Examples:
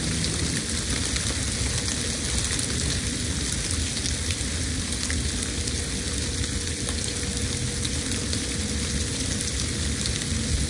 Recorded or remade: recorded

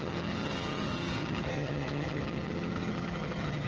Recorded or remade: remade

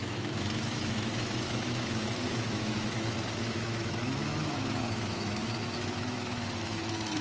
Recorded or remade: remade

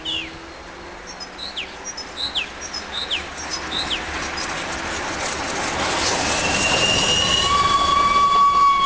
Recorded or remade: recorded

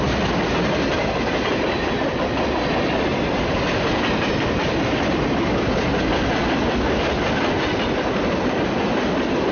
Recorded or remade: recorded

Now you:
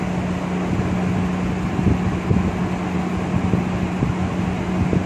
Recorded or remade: recorded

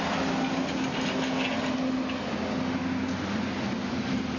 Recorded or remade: recorded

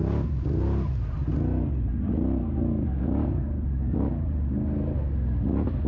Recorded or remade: recorded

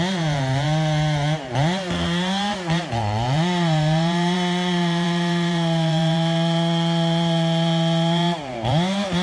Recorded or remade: remade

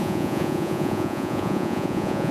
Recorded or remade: remade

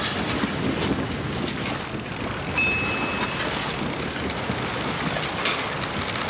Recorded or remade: recorded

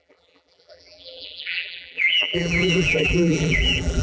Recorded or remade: remade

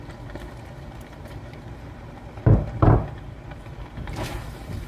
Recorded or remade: remade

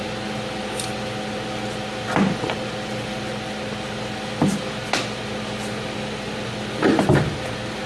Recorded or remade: recorded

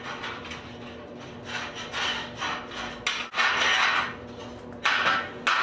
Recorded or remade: recorded